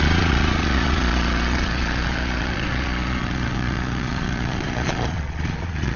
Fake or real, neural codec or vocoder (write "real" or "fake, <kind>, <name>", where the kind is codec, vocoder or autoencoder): fake, vocoder, Vocos